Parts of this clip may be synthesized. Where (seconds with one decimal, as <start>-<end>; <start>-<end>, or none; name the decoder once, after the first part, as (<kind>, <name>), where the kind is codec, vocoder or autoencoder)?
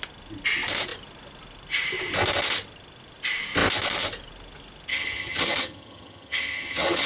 4.9-7.1 (vocoder, HiFi-GAN)